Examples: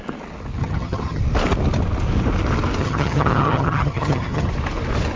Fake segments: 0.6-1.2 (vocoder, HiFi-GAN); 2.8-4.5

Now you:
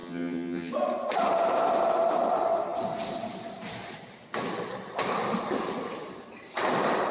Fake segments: 0.0-0.7 (vocoder, HiFi-GAN)

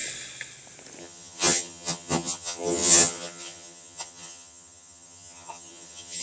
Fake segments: 1.0-6.2 (vocoder, HiFi-GAN)